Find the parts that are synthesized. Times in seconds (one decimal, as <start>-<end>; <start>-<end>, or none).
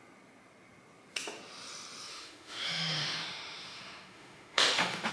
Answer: 2.1-5.1